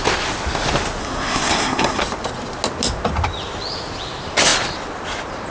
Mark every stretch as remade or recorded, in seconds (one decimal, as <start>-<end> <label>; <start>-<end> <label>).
0.0-1.0 recorded; 1.0-2.0 remade; 2.0-5.5 recorded